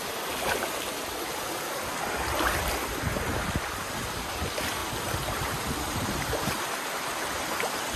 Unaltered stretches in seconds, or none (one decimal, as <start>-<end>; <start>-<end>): 0.0-8.0